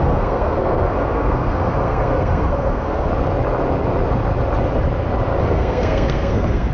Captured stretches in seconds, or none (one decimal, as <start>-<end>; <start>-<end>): 3.1-5.4

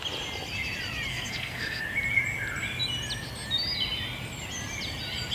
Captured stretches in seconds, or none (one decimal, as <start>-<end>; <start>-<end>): 0.0-1.1; 1.8-5.3

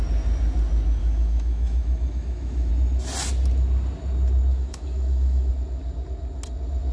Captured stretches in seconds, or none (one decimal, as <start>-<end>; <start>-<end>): 0.0-1.0; 2.7-4.5; 5.5-6.9

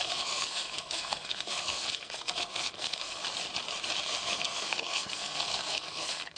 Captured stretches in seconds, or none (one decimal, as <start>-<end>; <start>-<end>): 3.2-4.0

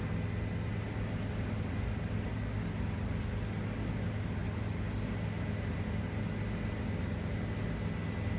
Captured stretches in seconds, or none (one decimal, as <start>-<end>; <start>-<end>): 0.0-8.4

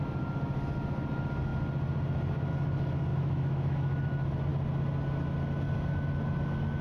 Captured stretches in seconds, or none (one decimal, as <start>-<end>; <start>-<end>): 0.0-3.1; 4.1-6.8